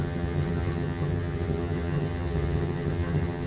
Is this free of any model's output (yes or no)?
no